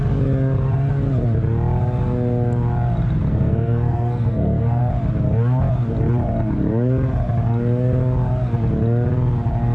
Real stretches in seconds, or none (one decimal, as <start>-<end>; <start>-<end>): 0.0-3.3; 4.8-9.7